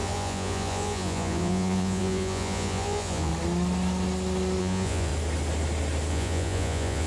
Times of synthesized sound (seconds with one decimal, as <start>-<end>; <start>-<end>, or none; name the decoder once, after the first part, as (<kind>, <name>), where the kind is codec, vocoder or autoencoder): 0.0-3.3 (vocoder, Vocos); 4.6-5.1; 6.1-7.1